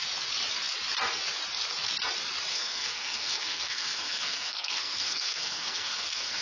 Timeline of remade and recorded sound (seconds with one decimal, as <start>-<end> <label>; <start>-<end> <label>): 0.0-2.5 recorded; 2.5-6.4 remade

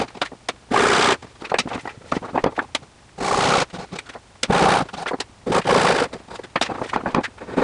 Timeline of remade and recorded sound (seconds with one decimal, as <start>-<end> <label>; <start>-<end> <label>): 0.0-7.6 recorded

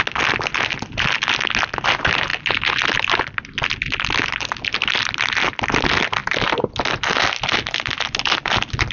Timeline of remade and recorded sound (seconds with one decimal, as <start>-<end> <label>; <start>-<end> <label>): 0.0-8.9 recorded

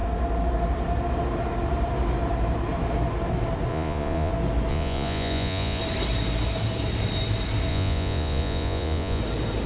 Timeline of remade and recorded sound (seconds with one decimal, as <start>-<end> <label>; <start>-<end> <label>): 0.0-3.7 recorded; 3.7-4.3 remade; 4.3-4.7 recorded; 4.7-5.8 remade; 5.8-7.7 recorded; 7.7-9.2 remade; 9.2-9.7 recorded